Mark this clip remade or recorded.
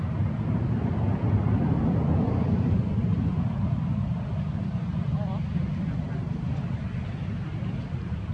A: remade